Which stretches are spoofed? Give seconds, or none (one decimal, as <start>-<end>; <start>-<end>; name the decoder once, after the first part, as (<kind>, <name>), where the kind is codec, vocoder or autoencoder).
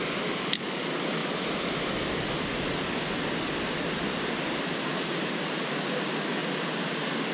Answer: none